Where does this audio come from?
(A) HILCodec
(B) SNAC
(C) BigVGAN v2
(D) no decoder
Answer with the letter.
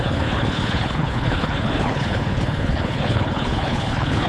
A